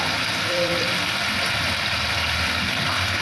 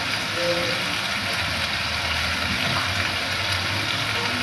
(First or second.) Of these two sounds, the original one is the second